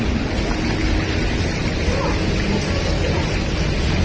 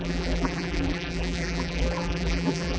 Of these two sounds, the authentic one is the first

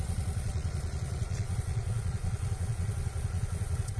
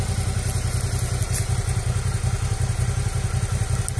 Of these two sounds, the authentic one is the second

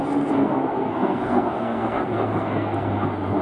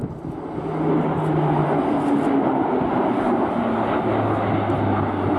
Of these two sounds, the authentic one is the second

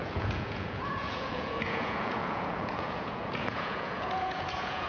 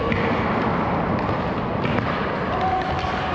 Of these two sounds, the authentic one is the second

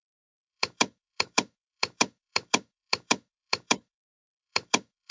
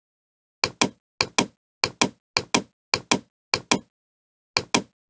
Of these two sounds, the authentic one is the second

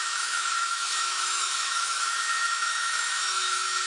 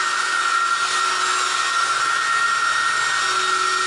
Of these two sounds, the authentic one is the second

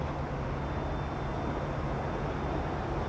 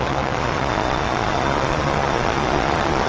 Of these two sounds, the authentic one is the first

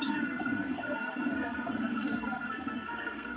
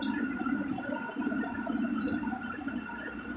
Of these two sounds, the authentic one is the second